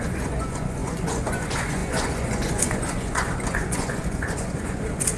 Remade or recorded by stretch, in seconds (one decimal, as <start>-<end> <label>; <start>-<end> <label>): 0.0-5.2 remade